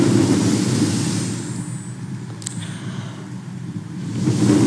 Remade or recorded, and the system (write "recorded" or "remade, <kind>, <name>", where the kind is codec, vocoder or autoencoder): recorded